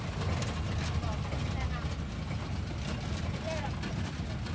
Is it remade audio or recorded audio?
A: recorded